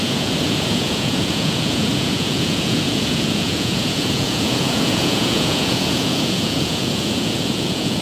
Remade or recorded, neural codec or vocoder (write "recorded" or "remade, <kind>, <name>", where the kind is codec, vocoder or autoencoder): remade, vocoder, Vocos